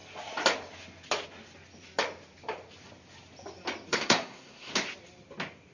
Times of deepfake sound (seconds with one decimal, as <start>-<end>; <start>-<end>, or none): 3.9-4.7